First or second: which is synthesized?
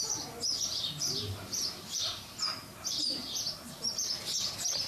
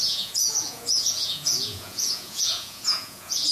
second